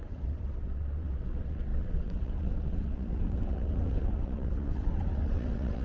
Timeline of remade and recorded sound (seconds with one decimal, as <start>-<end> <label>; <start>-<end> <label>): 0.0-5.8 remade